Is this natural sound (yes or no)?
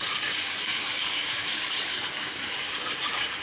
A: no